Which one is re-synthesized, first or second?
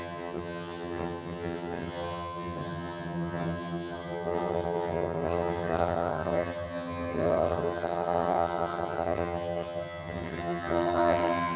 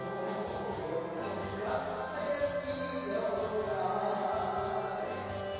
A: first